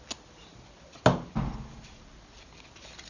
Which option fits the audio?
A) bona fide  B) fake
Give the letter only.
A